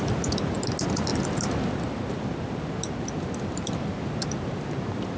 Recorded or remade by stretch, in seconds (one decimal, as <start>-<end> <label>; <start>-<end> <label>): 0.0-5.2 recorded